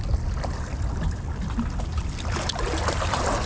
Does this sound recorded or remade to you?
recorded